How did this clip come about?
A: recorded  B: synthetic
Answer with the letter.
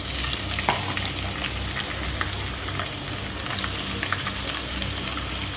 A